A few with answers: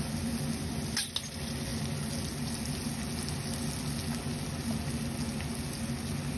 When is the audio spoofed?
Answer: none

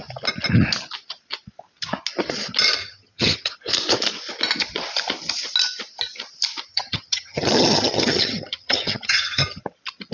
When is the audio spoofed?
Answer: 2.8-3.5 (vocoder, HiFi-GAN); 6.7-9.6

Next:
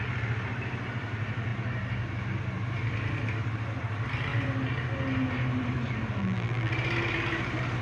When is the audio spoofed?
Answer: 6.2-6.7 (vocoder, BigVGAN v2)